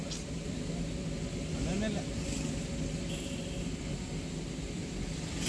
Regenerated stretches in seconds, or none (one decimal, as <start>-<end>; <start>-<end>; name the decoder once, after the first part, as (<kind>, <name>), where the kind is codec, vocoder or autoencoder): none